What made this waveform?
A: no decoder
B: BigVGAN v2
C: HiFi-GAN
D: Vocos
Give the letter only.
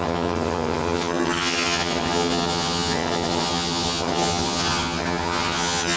C